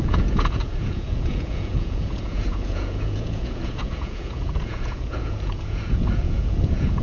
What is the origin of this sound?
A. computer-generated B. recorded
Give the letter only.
A